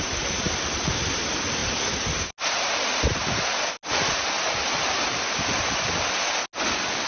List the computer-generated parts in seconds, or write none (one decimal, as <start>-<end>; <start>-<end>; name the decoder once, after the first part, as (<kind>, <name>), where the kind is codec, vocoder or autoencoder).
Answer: none